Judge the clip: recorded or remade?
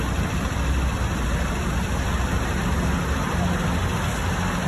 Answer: recorded